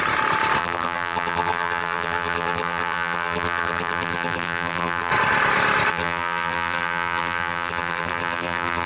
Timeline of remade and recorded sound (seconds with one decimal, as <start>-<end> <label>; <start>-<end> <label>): 0.0-0.6 recorded; 0.6-5.1 remade; 5.1-5.9 recorded; 5.9-8.9 remade